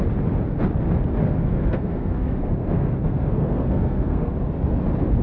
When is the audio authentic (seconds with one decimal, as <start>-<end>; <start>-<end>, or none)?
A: 0.0-1.2; 4.3-5.2